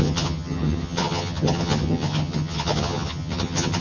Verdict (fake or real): fake